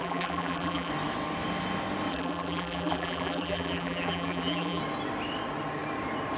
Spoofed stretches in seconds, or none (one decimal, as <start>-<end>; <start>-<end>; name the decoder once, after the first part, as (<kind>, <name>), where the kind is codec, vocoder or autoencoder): 0.0-0.9 (vocoder, BigVGAN v2); 2.1-4.8